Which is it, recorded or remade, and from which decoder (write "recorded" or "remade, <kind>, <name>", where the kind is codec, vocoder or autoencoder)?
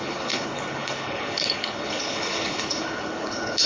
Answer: remade, codec, HILCodec